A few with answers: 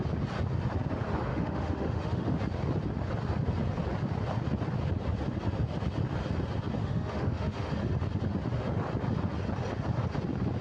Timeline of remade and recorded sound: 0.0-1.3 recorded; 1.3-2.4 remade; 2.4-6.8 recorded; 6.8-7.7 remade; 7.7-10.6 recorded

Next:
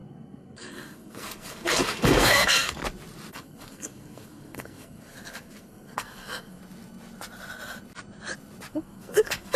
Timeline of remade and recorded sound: 0.0-2.8 remade; 2.8-3.3 recorded; 3.3-6.6 remade; 6.6-8.7 recorded; 8.7-9.6 remade

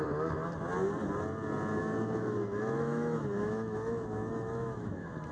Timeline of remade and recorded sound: 0.0-1.8 recorded; 1.8-5.3 remade

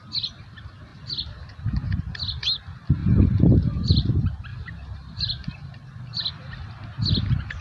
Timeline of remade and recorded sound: 0.0-3.0 recorded; 3.0-4.1 remade; 4.1-4.5 recorded; 4.5-6.3 remade; 6.3-7.6 recorded